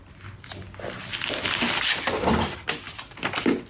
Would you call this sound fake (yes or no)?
no